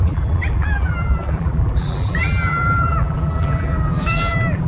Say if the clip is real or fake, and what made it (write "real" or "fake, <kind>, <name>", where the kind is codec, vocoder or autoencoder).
fake, vocoder, BigVGAN v2